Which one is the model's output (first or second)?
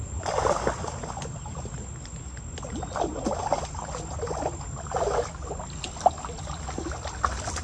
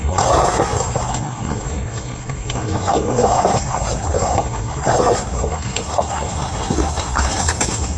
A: second